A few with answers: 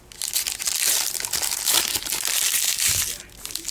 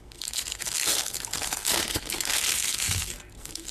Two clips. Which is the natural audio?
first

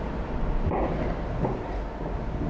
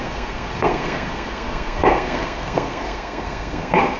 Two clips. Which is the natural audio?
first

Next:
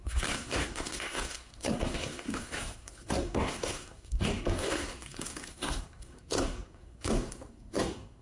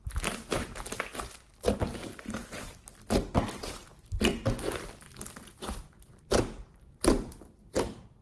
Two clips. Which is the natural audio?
second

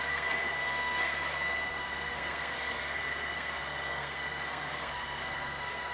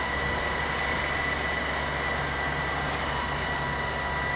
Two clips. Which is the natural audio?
second